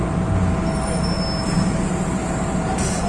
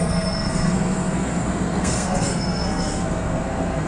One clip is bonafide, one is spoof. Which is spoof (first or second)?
second